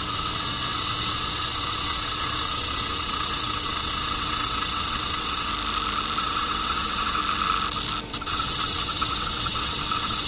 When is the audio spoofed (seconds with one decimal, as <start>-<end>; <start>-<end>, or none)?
0.0-5.5; 6.2-7.2; 8.1-10.3